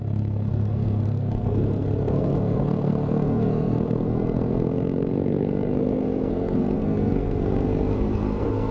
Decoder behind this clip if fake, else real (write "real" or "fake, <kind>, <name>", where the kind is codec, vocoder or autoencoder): fake, codec, SNAC